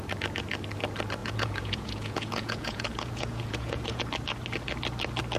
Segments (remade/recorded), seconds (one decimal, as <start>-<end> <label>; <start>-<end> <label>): 0.0-1.2 recorded; 1.2-4.0 remade; 4.0-5.4 recorded